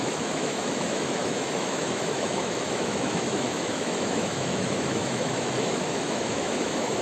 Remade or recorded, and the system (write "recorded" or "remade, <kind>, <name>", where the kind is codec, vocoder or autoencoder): remade, autoencoder, DAC-VAE